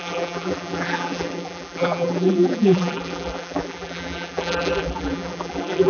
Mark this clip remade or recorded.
remade